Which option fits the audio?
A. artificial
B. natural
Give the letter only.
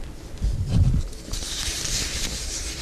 A